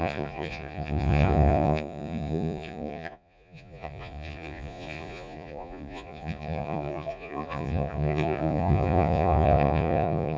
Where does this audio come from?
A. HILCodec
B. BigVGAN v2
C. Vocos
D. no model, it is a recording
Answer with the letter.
C